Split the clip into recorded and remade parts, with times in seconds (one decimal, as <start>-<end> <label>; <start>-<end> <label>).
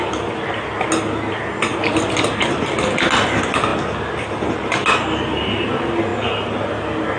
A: 0.0-7.2 recorded